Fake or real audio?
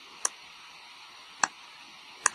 fake